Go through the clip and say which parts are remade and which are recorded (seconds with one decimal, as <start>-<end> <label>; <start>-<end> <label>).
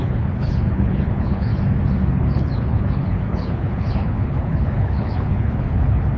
0.0-1.5 remade; 1.5-2.1 recorded; 2.1-6.2 remade